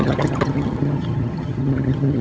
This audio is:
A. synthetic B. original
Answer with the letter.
A